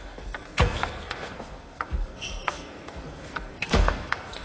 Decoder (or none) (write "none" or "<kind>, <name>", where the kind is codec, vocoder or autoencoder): codec, SNAC